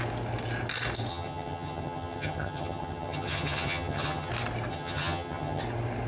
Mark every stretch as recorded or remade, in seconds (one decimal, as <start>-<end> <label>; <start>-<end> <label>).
0.0-1.1 recorded; 1.1-4.3 remade; 4.3-4.7 recorded; 4.7-5.6 remade; 5.6-6.1 recorded